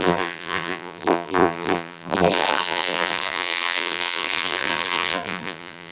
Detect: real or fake fake